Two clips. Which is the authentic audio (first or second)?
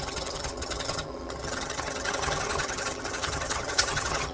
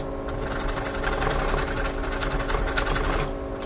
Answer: second